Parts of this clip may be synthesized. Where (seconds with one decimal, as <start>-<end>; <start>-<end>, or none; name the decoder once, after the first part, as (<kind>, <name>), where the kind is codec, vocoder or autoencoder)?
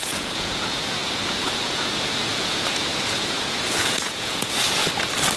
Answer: 0.0-4.8 (vocoder, Vocos)